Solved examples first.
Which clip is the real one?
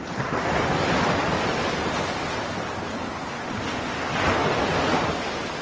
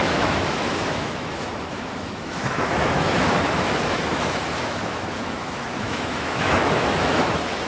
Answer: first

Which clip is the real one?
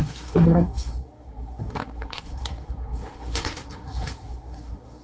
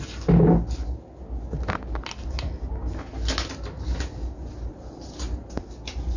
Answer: second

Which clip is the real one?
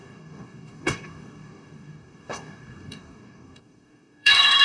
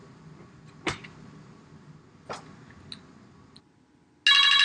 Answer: second